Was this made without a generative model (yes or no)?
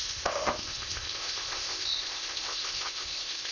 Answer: no